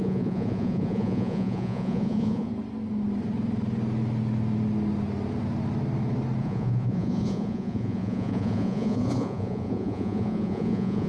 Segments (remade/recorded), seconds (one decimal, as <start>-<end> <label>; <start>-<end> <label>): 0.0-2.5 remade; 2.5-6.4 recorded; 6.4-11.1 remade